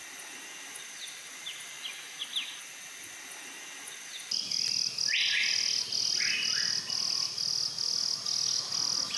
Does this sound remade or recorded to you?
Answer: recorded